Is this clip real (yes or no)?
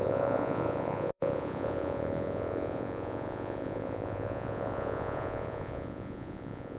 no